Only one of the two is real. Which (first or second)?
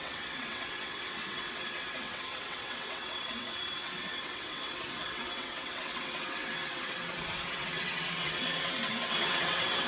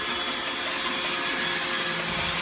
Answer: second